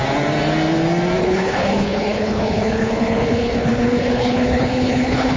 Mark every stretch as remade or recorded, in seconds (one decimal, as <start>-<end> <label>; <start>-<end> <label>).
0.0-1.2 recorded; 1.2-5.4 remade